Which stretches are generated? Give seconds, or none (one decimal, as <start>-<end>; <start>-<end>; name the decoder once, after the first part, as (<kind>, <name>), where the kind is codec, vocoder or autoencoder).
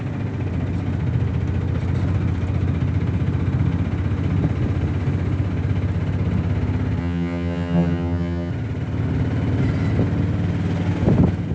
7.0-8.5 (vocoder, HiFi-GAN)